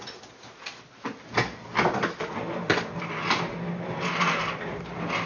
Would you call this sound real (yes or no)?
yes